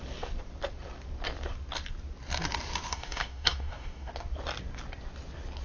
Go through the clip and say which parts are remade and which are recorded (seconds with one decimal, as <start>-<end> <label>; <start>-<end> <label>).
0.0-2.9 recorded; 2.9-4.1 remade; 4.1-5.6 recorded

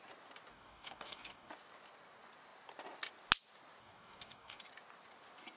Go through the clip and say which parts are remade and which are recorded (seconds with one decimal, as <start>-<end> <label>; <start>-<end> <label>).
0.0-0.5 recorded; 0.5-1.5 remade; 1.5-3.8 recorded; 3.8-4.6 remade; 4.6-5.6 recorded